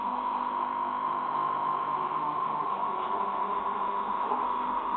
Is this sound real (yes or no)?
no